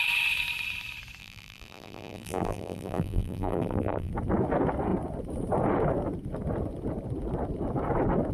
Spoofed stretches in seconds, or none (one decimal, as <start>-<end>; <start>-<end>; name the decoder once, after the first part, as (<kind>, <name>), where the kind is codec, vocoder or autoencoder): 1.2-4.1 (vocoder, BigVGAN v2)